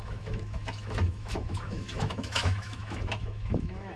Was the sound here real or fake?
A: fake